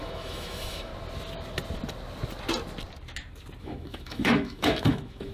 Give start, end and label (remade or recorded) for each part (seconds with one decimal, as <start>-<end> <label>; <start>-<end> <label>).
0.0-0.9 remade; 0.9-3.6 recorded; 3.6-5.3 remade